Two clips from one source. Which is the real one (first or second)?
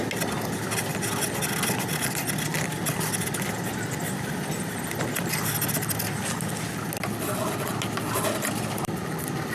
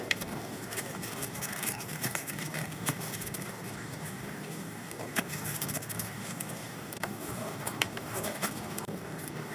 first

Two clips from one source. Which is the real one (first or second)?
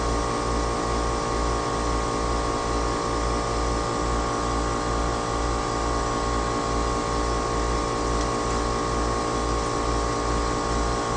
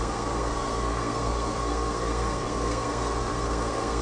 first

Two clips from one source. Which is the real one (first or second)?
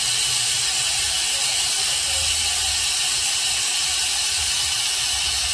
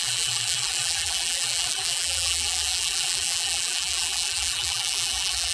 first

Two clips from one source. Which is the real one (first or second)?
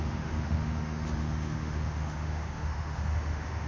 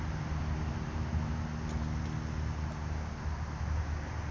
second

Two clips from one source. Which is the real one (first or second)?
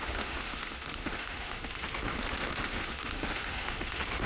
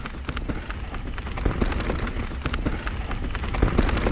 second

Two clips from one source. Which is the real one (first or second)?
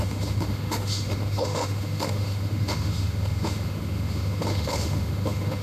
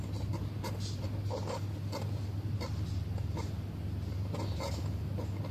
second